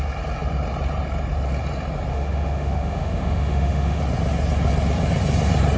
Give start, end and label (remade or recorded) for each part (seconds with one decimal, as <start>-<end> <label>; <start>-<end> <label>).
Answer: 0.0-2.1 recorded; 2.1-4.0 remade; 4.0-5.8 recorded